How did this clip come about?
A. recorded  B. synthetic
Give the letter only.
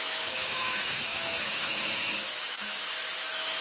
B